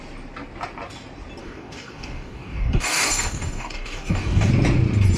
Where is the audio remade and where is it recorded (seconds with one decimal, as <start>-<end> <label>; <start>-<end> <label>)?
0.0-1.4 recorded; 1.4-4.5 remade; 4.5-5.2 recorded